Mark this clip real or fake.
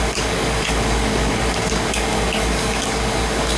fake